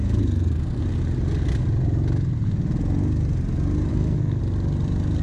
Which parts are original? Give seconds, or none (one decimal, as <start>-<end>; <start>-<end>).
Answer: 0.8-3.9; 4.4-5.2